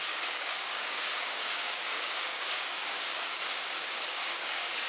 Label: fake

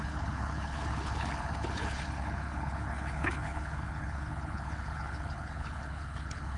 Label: fake